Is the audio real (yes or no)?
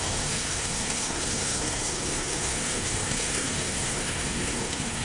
no